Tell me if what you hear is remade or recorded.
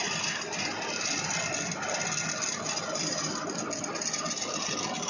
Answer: recorded